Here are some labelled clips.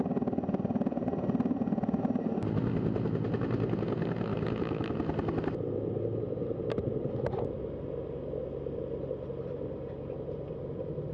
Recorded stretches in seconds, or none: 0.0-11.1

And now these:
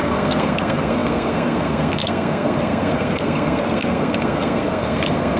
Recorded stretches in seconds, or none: none

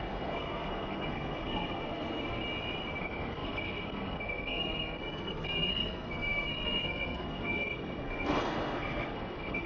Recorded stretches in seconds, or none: 2.4-3.0

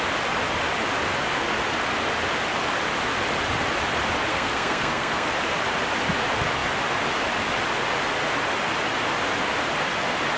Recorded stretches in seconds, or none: 0.0-4.3; 5.3-10.4

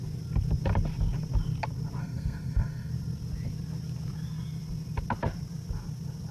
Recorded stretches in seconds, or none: 0.0-2.0; 2.9-6.3

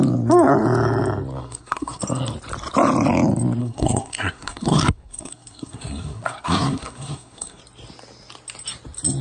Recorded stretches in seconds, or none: 0.0-1.4; 2.0-3.6; 7.6-9.2